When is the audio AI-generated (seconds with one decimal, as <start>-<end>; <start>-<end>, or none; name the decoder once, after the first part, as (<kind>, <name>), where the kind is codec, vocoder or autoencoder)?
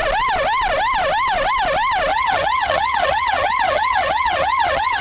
2.1-5.0 (vocoder, HiFi-GAN)